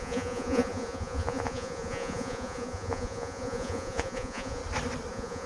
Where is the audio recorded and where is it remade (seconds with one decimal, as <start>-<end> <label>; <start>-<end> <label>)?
0.0-4.6 remade; 4.6-5.1 recorded; 5.1-5.5 remade